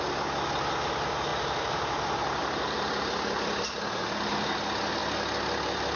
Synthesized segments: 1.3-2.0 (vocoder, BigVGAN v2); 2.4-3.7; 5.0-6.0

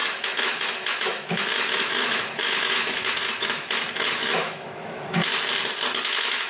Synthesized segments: 0.0-5.3 (autoencoder, DAC-VAE); 6.0-6.5

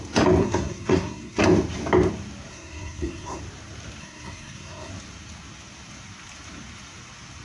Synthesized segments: 0.4-1.4 (codec, SNAC); 2.5-3.4; 4.0-4.9

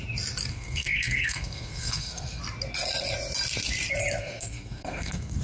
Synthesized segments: 0.5-2.4 (codec, SNAC); 4.2-5.4